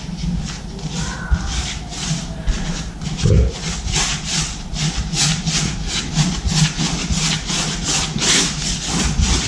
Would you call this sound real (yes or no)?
yes